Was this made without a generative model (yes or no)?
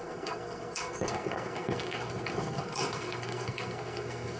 no